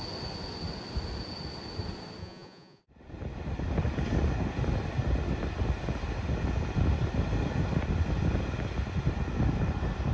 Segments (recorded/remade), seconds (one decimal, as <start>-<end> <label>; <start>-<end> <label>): 0.0-2.2 recorded; 2.2-2.8 remade; 2.8-10.1 recorded